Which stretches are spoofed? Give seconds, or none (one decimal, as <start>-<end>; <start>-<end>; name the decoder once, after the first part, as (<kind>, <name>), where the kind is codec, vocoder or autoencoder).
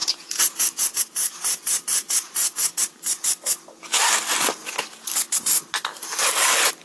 0.0-1.0 (vocoder, Vocos)